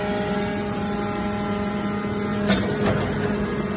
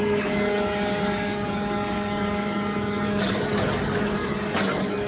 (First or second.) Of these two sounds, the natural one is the first